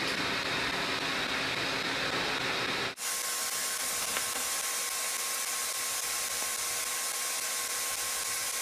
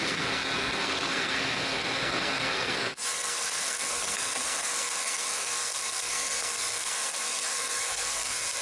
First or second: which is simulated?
second